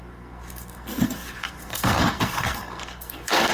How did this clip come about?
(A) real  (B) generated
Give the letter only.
B